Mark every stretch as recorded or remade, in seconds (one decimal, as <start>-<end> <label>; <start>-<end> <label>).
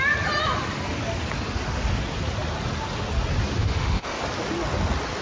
0.0-3.6 recorded; 3.6-4.2 remade; 4.2-5.2 recorded